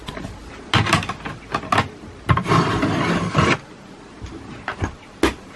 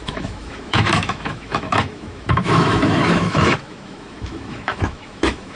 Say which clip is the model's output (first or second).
second